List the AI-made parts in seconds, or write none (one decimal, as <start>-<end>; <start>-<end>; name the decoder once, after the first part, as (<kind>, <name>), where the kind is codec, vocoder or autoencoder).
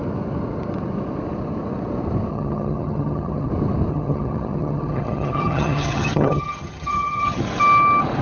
2.3-3.5 (vocoder, HiFi-GAN); 3.9-7.4